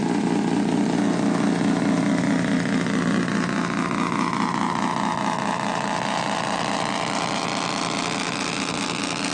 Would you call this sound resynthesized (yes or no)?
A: no